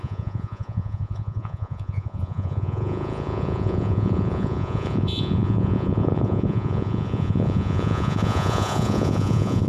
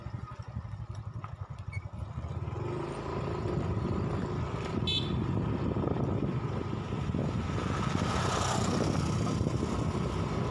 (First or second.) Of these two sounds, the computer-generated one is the first